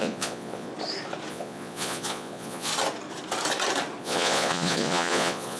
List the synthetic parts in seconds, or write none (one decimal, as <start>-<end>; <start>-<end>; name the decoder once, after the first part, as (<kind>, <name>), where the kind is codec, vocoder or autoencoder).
0.0-0.7 (vocoder, Vocos); 1.3-2.7; 4.0-5.6

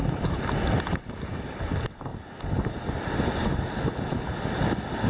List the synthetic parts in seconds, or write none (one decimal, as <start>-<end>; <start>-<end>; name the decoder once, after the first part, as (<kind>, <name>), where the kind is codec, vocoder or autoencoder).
none

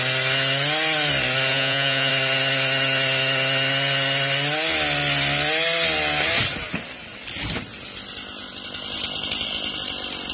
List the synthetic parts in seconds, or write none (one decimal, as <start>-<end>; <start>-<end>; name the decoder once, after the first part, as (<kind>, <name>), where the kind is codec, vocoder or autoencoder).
1.5-2.1 (vocoder, Vocos)

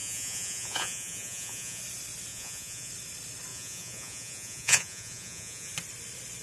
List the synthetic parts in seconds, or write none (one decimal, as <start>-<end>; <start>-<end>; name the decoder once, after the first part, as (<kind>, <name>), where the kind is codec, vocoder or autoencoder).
0.0-1.8 (vocoder, Vocos); 2.3-2.9; 3.5-5.7

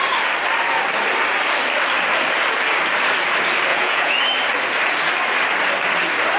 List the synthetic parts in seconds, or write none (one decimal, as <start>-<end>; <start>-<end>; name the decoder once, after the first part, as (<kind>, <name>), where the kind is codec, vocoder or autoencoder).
3.7-4.2 (vocoder, Vocos)

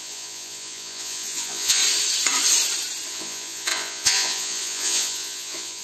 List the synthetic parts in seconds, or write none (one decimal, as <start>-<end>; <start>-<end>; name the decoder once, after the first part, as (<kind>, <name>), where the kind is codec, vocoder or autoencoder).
0.0-1.8 (vocoder, Vocos); 3.1-5.8